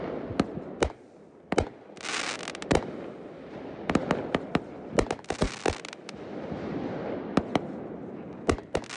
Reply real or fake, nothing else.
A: real